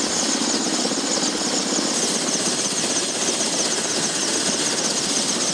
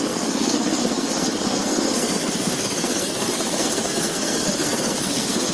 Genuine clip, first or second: first